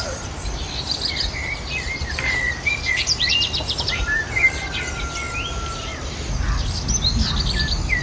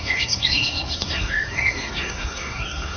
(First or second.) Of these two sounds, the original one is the first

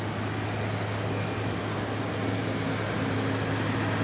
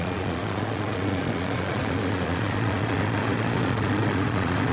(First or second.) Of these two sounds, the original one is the first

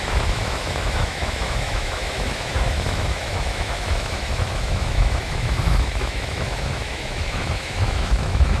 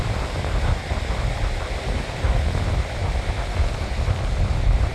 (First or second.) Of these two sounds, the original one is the second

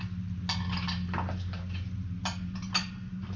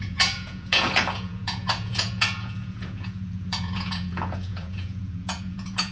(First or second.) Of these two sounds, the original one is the first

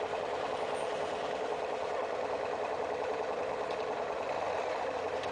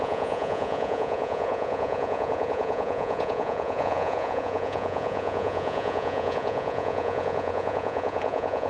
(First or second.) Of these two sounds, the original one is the first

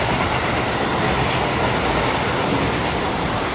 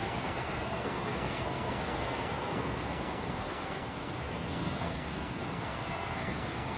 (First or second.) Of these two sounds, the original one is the first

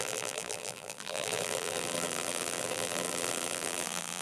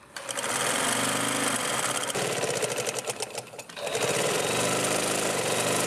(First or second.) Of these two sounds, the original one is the second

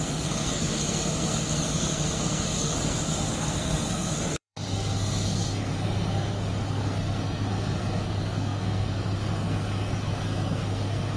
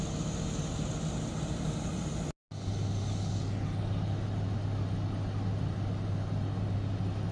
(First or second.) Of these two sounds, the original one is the second